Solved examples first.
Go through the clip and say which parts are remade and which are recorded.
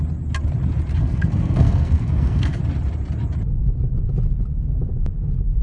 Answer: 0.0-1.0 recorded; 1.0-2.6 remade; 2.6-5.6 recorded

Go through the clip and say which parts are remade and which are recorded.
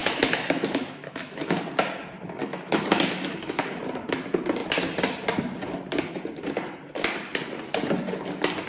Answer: 0.0-1.6 remade; 1.6-2.4 recorded; 2.4-3.8 remade; 3.8-8.7 recorded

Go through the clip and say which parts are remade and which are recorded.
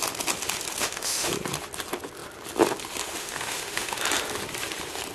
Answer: 0.0-0.8 recorded; 0.8-1.3 remade; 1.3-3.2 recorded; 3.2-4.0 remade; 4.0-5.1 recorded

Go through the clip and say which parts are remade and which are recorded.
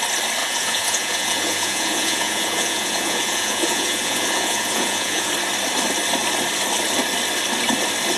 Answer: 0.0-0.4 recorded; 0.4-5.3 remade; 5.3-8.2 recorded